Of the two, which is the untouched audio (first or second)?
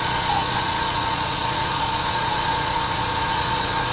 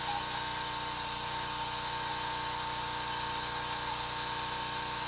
second